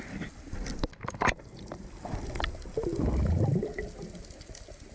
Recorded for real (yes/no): yes